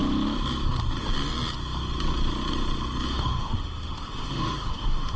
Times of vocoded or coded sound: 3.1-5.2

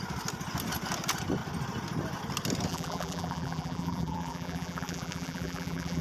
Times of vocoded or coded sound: 2.7-6.0

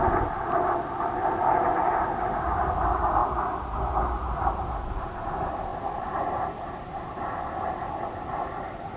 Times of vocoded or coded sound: none

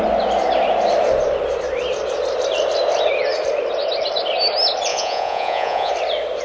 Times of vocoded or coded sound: 4.9-5.9